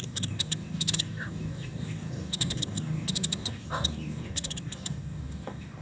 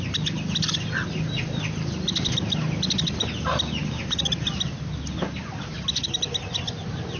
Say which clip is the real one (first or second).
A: second